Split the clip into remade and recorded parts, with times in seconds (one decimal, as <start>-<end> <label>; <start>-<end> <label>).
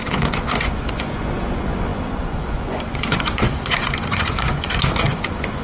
0.0-5.6 remade